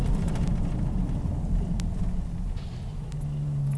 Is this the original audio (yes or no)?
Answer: yes